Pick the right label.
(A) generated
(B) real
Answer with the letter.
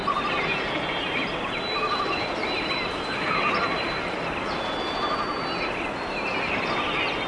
B